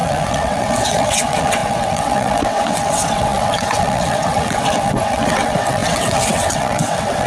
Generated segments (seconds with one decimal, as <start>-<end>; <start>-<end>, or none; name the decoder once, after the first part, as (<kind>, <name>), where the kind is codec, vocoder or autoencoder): 0.0-7.3 (vocoder, WaveNeXt)